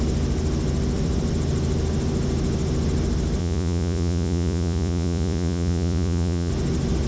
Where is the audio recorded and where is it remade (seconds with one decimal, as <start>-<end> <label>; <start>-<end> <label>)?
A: 0.0-3.4 recorded; 3.4-6.5 remade; 6.5-7.1 recorded